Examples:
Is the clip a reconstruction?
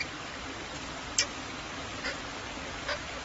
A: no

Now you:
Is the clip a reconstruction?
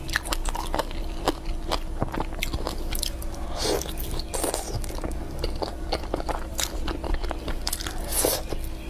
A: no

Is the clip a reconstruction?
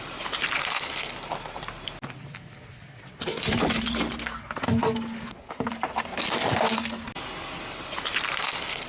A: no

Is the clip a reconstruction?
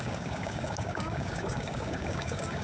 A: yes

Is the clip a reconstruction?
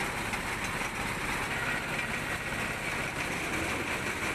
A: no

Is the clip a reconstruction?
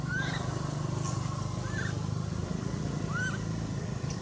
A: no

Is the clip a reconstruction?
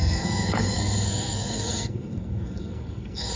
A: yes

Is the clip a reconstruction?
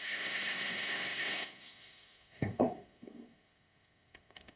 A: yes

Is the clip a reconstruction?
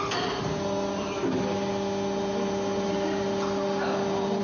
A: no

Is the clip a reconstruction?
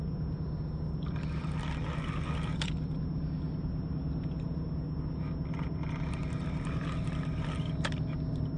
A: no